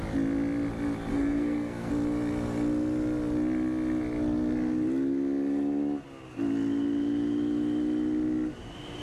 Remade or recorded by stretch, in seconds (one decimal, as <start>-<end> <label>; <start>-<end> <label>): 0.0-1.1 recorded; 1.1-1.9 remade; 1.9-9.0 recorded

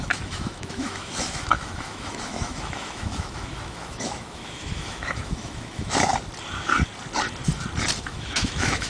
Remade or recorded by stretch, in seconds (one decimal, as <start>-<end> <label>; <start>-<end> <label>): 0.0-6.1 remade; 6.1-8.0 recorded; 8.0-8.9 remade

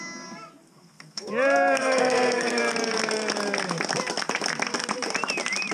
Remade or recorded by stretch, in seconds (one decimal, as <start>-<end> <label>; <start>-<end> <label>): 0.0-0.7 recorded; 0.7-1.3 remade; 1.3-1.8 recorded; 1.8-2.6 remade; 2.6-5.7 recorded

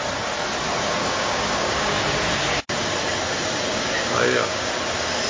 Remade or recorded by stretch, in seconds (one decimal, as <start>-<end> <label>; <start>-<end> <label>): 0.0-1.0 recorded; 1.0-2.0 remade; 2.0-3.7 recorded; 3.7-4.7 remade; 4.7-5.3 recorded